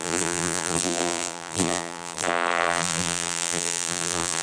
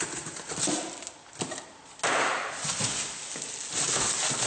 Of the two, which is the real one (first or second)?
second